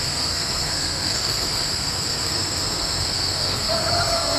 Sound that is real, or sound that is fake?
fake